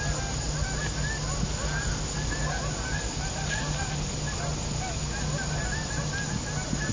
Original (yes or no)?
yes